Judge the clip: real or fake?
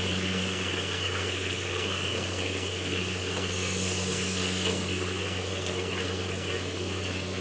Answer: fake